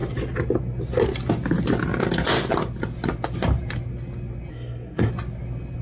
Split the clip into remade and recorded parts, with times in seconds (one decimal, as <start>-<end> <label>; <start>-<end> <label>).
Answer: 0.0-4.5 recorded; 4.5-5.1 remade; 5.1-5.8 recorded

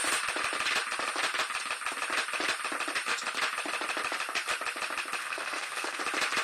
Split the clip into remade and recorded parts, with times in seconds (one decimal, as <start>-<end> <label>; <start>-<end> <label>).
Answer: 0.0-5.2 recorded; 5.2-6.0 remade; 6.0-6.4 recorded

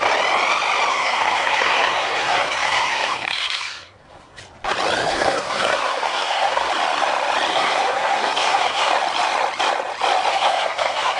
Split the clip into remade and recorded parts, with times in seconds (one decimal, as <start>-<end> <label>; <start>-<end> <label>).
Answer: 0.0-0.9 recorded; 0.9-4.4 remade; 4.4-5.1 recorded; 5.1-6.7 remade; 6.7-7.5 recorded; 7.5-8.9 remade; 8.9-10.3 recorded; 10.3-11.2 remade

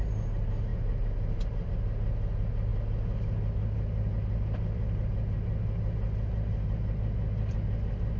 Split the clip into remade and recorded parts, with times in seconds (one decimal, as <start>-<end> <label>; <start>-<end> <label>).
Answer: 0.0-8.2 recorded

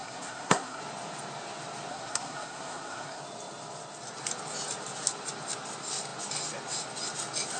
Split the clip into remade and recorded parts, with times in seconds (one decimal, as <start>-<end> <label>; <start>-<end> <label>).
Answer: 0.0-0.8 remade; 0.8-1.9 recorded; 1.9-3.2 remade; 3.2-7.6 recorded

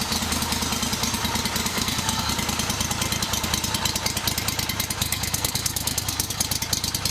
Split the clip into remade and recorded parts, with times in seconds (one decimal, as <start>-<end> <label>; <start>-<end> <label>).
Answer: 0.0-1.7 recorded; 1.7-2.3 remade; 2.3-5.0 recorded; 5.0-6.4 remade; 6.4-7.1 recorded

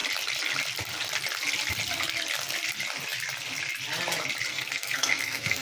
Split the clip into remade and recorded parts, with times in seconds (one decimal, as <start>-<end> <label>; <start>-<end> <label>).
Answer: 0.0-4.5 recorded; 4.5-5.6 remade